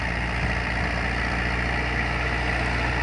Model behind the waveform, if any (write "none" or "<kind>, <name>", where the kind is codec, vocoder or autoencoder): none